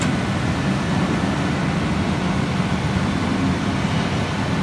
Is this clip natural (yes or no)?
yes